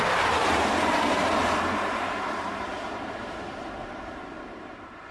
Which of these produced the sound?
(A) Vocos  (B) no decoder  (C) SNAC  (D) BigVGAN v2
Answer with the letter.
D